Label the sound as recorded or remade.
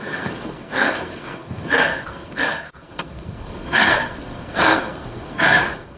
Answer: remade